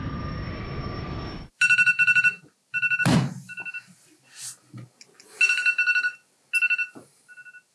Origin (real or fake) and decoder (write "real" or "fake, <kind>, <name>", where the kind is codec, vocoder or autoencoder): real